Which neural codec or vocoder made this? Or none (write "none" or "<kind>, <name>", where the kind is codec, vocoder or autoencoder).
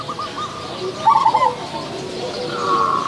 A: none